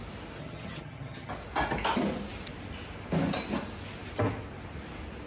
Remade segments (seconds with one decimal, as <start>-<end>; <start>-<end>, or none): 0.4-1.3